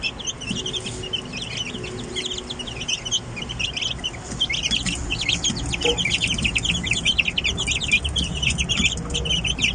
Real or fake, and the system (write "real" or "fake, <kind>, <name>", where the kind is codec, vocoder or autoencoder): real